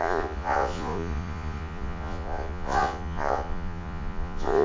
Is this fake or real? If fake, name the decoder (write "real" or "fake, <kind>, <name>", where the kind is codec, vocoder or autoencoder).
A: fake, vocoder, Vocos